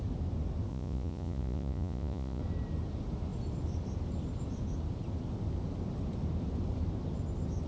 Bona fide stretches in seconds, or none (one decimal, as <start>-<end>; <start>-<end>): 0.0-0.7; 2.4-7.7